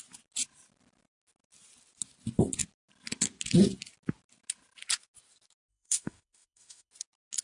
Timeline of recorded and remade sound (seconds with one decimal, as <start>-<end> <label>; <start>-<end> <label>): 0.0-5.7 recorded; 5.7-6.9 remade; 6.9-7.4 recorded

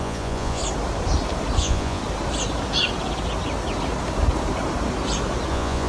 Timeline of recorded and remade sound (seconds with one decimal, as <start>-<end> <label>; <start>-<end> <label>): 0.0-0.6 remade; 0.6-1.6 recorded; 1.6-2.0 remade; 2.0-5.5 recorded; 5.5-5.9 remade

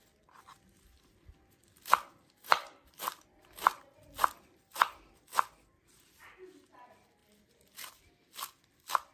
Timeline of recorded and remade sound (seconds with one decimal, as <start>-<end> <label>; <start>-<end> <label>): 0.0-1.6 recorded; 1.6-5.1 remade; 5.1-9.1 recorded

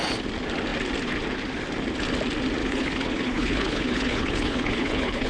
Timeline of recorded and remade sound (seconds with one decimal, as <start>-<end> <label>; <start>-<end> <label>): 0.0-2.6 recorded; 2.6-5.3 remade

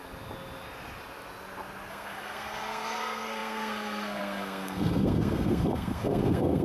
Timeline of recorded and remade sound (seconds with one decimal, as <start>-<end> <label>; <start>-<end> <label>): 0.0-1.9 recorded; 1.9-6.6 remade

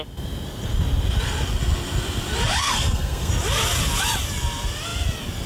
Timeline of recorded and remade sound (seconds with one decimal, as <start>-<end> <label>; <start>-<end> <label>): 0.0-2.6 recorded; 2.6-3.3 remade; 3.3-5.5 recorded

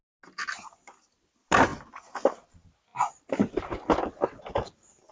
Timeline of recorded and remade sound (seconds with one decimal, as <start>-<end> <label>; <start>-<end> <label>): 0.0-5.1 recorded

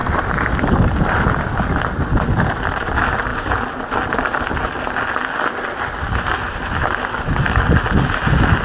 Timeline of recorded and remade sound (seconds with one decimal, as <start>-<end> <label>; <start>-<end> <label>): 0.0-8.6 recorded